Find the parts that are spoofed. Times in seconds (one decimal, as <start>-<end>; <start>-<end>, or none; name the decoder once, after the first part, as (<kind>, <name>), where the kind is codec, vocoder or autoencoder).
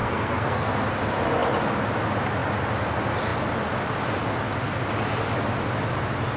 0.0-0.7 (codec, SNAC)